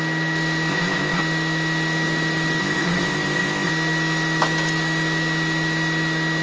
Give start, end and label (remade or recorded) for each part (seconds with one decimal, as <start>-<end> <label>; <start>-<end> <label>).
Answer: 0.0-0.7 recorded; 0.7-1.2 remade; 1.2-2.6 recorded; 2.6-3.7 remade; 3.7-6.4 recorded